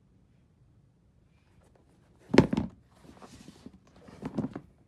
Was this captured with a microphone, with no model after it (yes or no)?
yes